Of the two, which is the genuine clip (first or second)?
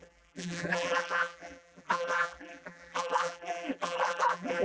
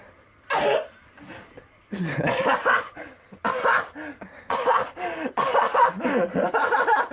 second